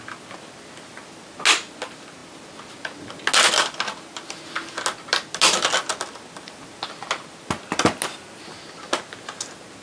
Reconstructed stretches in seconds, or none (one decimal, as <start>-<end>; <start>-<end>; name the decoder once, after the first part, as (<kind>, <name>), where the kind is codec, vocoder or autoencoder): none